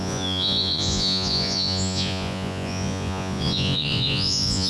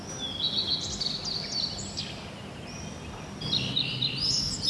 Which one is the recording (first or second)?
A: second